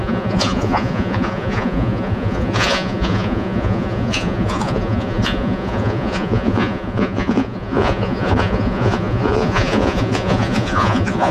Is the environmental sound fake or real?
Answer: fake